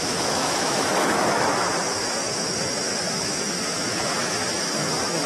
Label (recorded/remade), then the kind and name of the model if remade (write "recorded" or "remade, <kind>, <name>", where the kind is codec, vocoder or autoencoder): remade, autoencoder, DAC-VAE